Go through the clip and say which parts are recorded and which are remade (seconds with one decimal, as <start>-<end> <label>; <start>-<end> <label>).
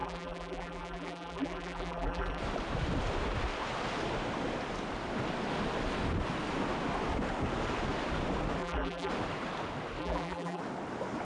0.0-2.4 remade; 2.4-8.6 recorded; 8.6-9.1 remade; 9.1-10.0 recorded; 10.0-10.6 remade; 10.6-11.2 recorded